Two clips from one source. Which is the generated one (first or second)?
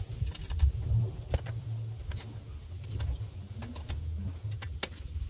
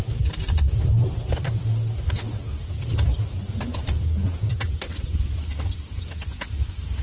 second